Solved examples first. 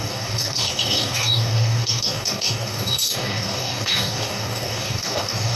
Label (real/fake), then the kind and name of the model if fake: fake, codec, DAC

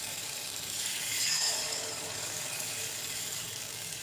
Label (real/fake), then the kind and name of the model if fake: fake, codec, DAC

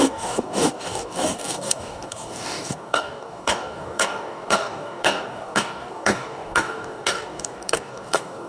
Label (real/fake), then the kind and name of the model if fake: fake, codec, DAC